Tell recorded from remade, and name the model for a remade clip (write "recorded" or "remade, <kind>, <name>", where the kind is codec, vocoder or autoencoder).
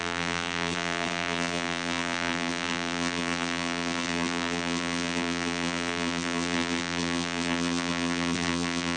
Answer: remade, vocoder, BigVGAN v2